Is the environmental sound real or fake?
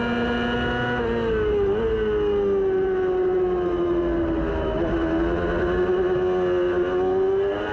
real